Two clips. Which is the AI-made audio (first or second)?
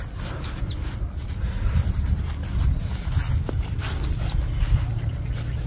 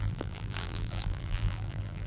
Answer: second